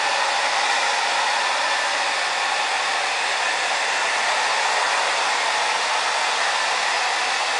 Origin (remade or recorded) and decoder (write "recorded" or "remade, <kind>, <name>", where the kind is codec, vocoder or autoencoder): recorded